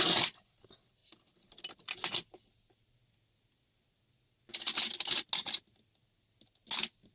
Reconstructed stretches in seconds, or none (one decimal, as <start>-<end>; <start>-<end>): none